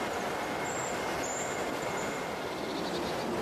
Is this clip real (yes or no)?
yes